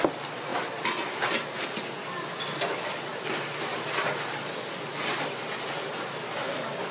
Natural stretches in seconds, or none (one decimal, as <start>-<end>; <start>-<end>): 0.0-6.9